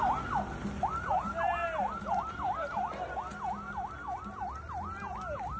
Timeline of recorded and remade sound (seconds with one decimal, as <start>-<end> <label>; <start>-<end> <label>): 0.0-5.6 recorded